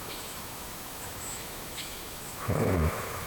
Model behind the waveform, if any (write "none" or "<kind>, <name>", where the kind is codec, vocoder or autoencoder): autoencoder, DAC-VAE